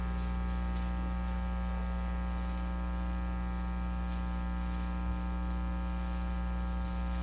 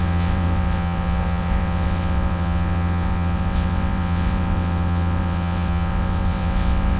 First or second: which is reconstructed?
second